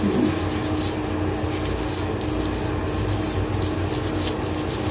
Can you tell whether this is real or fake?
real